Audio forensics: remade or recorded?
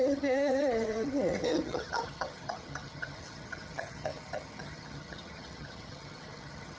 remade